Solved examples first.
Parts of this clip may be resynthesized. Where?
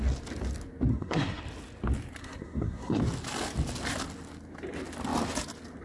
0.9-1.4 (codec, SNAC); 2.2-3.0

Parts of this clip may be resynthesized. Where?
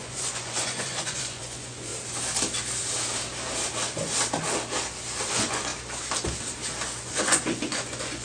0.0-1.9 (vocoder, Vocos); 5.3-5.7; 7.0-8.2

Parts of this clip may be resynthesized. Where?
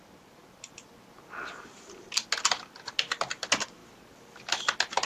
none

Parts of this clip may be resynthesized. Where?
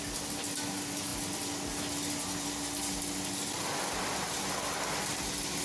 none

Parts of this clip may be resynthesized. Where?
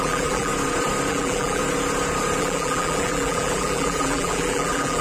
0.0-0.5 (vocoder, BigVGAN v2); 1.1-1.6; 2.4-5.0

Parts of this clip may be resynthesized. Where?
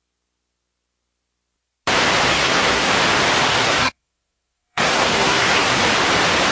2.3-2.9 (codec, SNAC); 3.5-5.8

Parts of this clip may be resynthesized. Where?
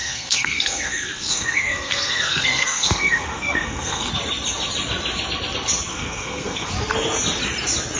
0.0-4.1 (codec, SNAC); 5.9-6.7